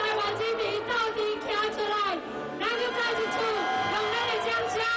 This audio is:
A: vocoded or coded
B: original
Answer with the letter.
B